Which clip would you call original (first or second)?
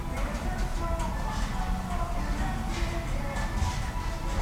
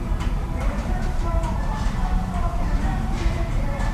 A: first